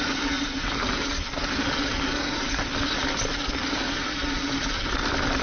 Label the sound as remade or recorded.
recorded